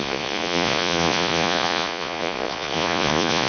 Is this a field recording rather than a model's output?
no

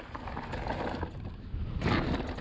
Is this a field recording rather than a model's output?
yes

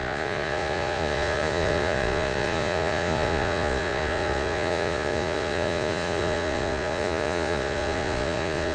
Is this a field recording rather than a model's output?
no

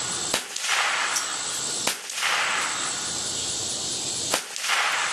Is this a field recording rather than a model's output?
yes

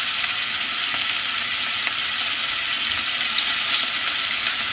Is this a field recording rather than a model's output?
yes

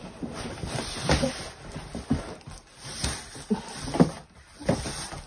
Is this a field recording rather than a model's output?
yes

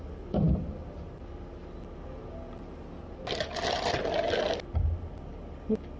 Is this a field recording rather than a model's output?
yes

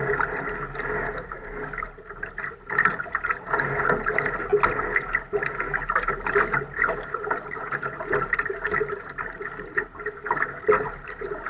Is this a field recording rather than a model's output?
yes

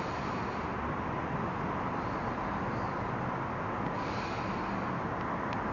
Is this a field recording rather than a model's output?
yes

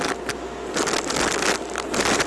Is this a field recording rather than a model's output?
yes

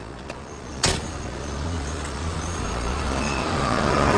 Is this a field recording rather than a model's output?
no